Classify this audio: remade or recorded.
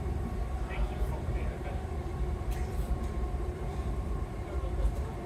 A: remade